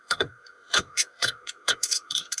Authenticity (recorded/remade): remade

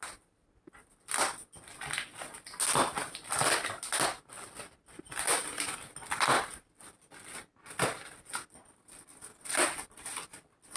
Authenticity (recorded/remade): recorded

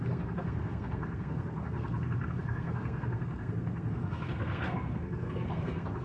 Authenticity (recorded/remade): remade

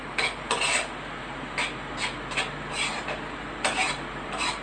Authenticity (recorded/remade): remade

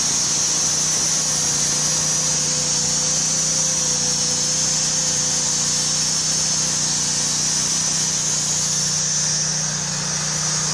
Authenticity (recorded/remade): recorded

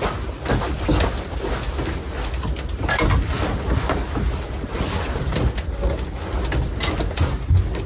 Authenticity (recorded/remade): recorded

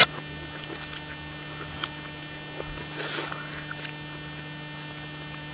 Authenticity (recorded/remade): recorded